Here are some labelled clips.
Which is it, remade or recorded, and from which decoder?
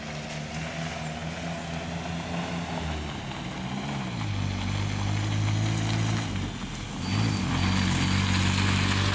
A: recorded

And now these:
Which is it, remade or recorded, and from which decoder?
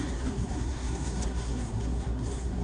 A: remade, codec, SNAC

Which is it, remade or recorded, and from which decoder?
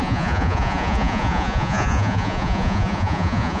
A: remade, vocoder, Vocos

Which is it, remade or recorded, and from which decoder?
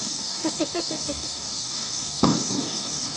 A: remade, codec, DAC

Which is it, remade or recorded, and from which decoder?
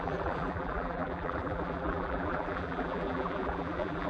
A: remade, vocoder, BigVGAN v2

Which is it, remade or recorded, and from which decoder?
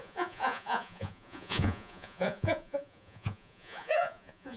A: remade, vocoder, Vocos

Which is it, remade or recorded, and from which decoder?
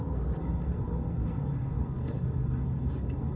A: remade, codec, SNAC